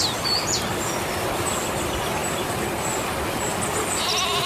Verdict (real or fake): real